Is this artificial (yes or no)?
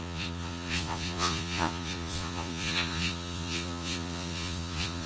yes